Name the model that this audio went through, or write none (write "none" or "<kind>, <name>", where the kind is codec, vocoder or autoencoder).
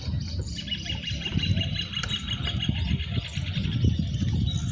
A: none